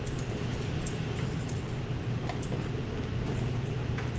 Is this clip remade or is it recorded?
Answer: remade